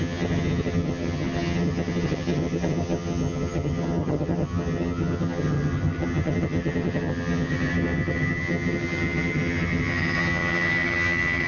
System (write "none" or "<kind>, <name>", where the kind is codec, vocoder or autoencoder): vocoder, HiFi-GAN